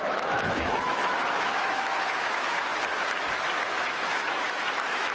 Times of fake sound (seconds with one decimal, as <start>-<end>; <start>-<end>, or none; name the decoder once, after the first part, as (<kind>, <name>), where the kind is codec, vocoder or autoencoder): 0.0-2.7 (autoencoder, DAC-VAE); 3.3-5.1